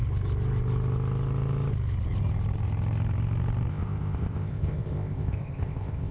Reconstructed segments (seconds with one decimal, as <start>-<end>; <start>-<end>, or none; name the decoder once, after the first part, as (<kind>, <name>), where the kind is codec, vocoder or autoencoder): 3.7-6.1 (codec, ZipCodec)